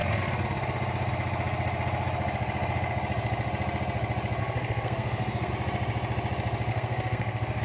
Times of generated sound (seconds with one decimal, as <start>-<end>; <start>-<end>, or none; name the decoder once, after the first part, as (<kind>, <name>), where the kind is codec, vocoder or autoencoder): 4.4-5.5 (codec, SNAC); 6.7-7.6